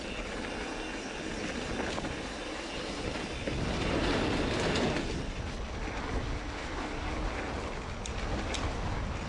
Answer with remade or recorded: recorded